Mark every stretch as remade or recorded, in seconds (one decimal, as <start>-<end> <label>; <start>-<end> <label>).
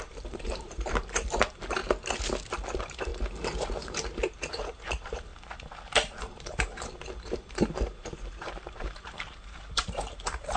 0.0-1.8 remade; 1.8-2.5 recorded; 2.5-3.1 remade; 3.1-4.5 recorded; 4.5-10.6 remade